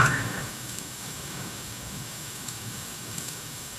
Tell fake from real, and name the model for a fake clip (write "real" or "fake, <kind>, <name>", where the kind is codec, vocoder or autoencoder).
fake, codec, DAC